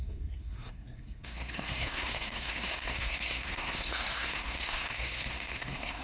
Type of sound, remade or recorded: remade